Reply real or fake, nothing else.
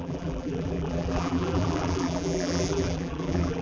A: fake